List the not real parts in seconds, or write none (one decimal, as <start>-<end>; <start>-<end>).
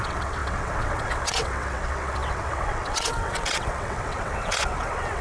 0.0-5.2